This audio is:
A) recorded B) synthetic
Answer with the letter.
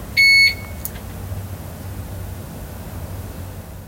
A